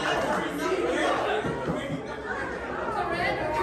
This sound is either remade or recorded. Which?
recorded